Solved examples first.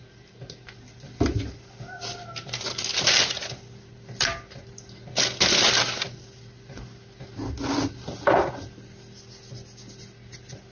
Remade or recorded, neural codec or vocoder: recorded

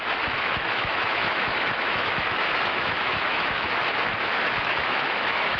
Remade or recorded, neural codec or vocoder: remade, autoencoder, DAC-VAE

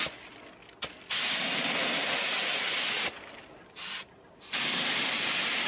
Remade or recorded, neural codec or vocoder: recorded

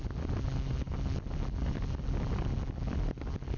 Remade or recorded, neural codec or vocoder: recorded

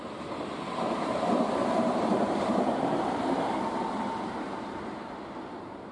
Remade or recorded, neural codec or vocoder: remade, vocoder, BigVGAN v2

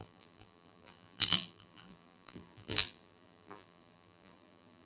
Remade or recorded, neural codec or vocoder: remade, vocoder, BigVGAN v2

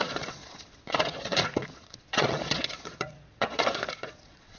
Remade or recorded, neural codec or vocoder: remade, vocoder, Vocos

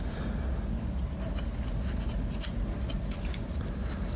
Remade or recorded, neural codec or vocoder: recorded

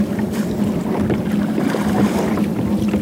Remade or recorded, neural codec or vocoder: recorded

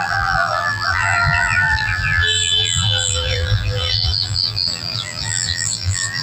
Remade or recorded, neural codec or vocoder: remade, vocoder, BigVGAN v2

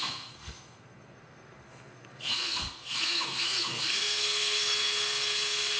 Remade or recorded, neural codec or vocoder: remade, codec, SNAC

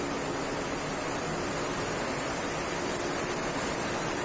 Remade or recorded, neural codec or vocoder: remade, vocoder, BigVGAN v2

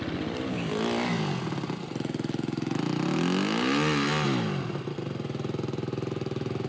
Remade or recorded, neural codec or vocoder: recorded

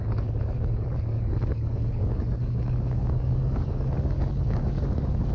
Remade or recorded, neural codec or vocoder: remade, codec, DAC